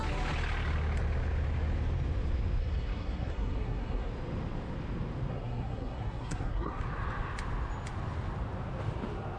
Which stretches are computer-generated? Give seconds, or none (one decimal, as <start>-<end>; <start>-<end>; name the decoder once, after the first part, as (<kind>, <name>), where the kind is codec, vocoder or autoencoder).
2.6-4.1 (codec, SNAC); 5.3-6.8